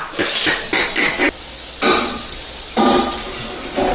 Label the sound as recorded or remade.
recorded